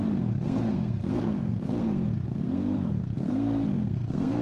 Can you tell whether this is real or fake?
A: fake